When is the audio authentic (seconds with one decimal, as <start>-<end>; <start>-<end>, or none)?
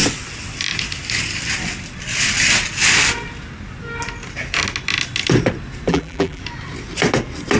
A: 0.0-5.9; 6.4-7.6